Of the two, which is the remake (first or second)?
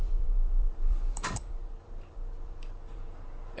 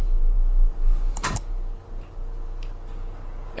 first